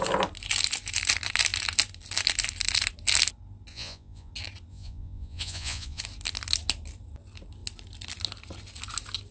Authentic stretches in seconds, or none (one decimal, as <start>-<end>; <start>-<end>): 0.0-3.7; 4.3-4.7; 6.0-9.3